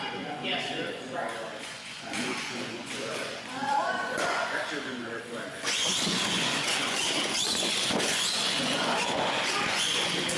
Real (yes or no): no